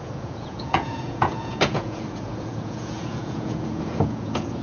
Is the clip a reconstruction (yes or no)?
yes